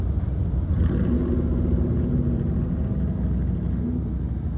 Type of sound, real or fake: real